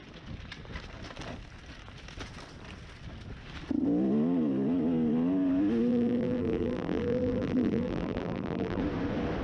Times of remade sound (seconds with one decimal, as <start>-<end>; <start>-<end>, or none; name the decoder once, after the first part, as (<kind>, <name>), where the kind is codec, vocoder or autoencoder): 5.9-8.8 (vocoder, BigVGAN v2)